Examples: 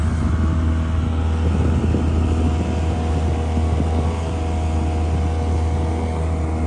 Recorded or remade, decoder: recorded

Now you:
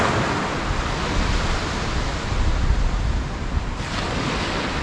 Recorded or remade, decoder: recorded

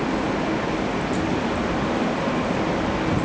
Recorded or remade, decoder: recorded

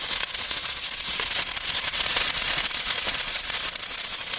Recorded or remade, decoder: remade, vocoder, Vocos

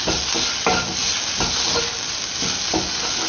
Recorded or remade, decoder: recorded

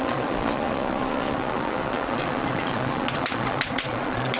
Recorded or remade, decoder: remade, vocoder, Vocos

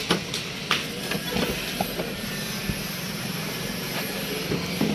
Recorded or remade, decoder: recorded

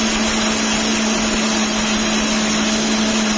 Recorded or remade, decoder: recorded